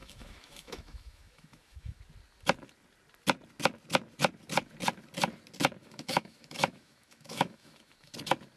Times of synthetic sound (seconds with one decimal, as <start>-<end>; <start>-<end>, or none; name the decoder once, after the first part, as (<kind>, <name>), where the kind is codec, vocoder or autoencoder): 0.0-2.0 (autoencoder, DAC-VAE); 5.8-8.1